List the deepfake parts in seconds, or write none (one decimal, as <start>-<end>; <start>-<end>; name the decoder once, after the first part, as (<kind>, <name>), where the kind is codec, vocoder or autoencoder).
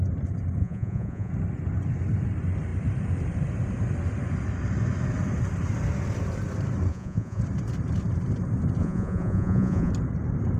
0.6-1.3 (vocoder, Vocos); 6.9-7.4; 8.8-9.9